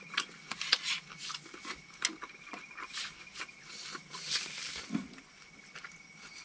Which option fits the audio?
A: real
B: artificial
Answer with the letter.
A